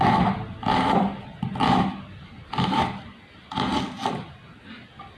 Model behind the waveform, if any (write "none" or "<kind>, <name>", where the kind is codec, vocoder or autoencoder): none